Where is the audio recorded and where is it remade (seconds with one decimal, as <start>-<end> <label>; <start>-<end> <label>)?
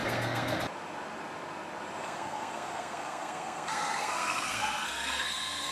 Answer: 0.0-0.6 remade; 0.6-2.0 recorded; 2.0-5.7 remade